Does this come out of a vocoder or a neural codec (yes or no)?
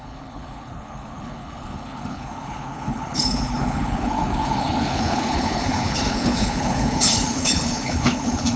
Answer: yes